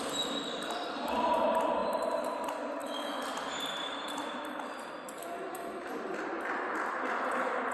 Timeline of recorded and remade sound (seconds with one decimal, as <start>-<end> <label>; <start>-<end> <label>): 0.0-1.8 recorded; 1.8-2.4 remade; 2.4-7.7 recorded